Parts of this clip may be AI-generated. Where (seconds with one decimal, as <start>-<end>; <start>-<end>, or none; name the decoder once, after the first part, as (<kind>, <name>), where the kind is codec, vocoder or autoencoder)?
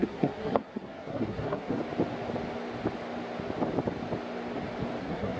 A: 0.0-1.8 (codec, SNAC); 5.0-5.4